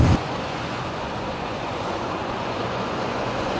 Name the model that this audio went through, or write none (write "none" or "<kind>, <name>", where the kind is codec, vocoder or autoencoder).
vocoder, Vocos